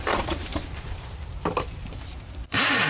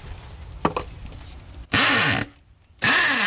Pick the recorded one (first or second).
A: second